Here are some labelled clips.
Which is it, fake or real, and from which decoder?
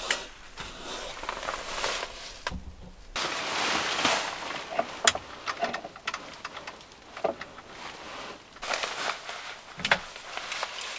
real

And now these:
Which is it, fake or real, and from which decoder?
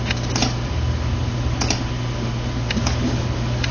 real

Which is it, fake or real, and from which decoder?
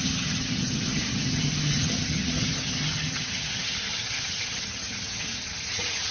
fake, vocoder, HiFi-GAN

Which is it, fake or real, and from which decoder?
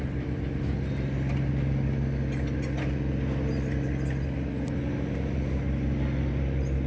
real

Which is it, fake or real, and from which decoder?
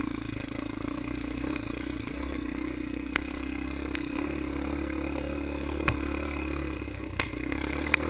fake, codec, SNAC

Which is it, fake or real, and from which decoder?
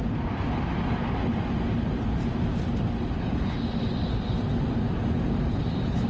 real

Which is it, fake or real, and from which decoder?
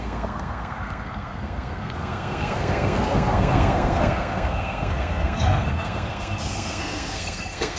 fake, codec, SNAC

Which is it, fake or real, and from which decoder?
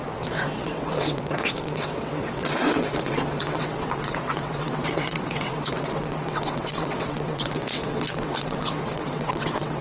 fake, vocoder, WaveNeXt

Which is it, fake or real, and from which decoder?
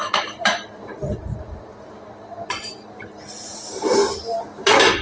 fake, vocoder, BigVGAN v2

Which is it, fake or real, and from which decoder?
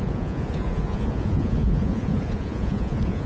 fake, vocoder, Vocos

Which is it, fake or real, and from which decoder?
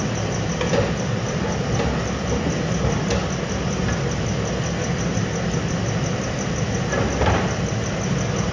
real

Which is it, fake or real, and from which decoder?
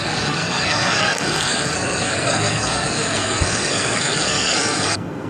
fake, codec, SNAC